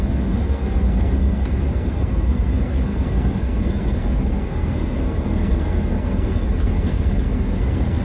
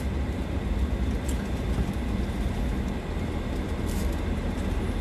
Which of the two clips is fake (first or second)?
first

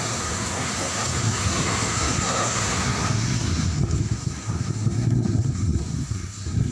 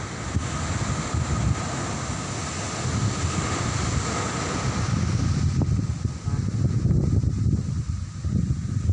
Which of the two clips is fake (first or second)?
first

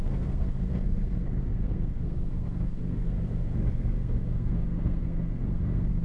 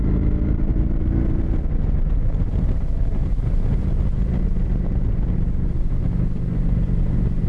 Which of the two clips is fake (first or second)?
first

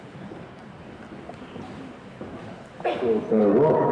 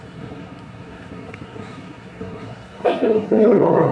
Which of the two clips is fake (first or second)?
second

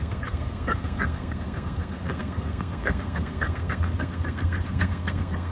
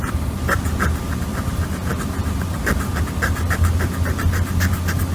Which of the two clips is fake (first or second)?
first